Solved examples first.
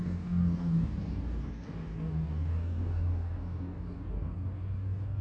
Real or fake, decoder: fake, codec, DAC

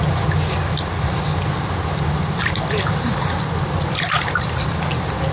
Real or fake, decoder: real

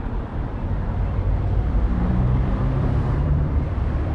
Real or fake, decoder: fake, vocoder, BigVGAN v2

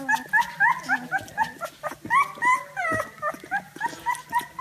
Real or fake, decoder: real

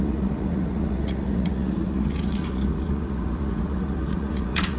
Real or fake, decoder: fake, vocoder, Vocos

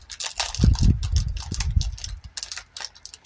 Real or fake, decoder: real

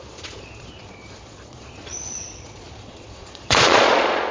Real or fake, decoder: fake, vocoder, Vocos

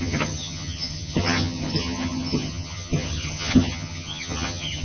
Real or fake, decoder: fake, vocoder, HiFi-GAN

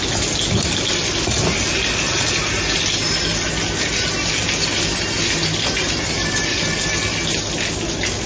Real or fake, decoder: real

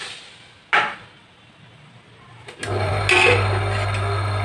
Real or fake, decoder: real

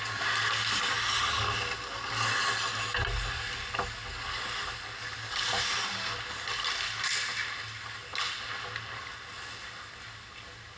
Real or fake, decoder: real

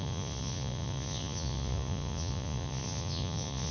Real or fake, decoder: fake, vocoder, Vocos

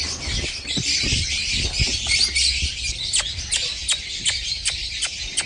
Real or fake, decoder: real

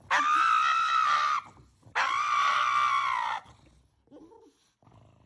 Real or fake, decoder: real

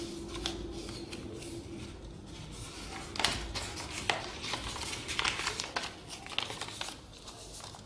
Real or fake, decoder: real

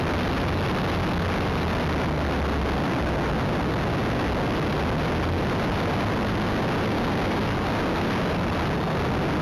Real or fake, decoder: real